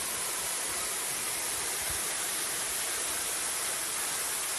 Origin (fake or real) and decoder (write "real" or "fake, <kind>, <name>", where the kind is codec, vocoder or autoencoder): real